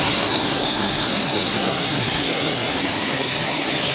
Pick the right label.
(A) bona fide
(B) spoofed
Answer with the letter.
B